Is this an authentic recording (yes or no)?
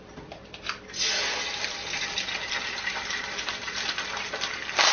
yes